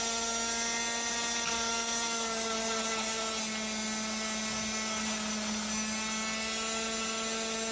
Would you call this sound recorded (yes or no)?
yes